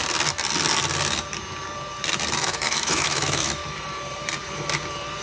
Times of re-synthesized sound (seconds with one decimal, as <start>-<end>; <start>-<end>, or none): 2.4-3.6

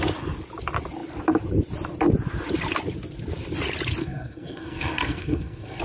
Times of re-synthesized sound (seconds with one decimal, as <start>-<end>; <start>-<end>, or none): 4.0-5.8